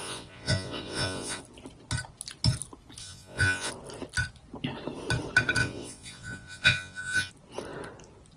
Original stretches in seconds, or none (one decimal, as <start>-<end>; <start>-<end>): 1.4-3.0; 3.7-5.6; 7.3-8.4